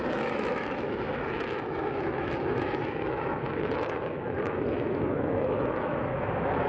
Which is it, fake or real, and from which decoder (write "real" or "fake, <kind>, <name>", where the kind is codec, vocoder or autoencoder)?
fake, autoencoder, DAC-VAE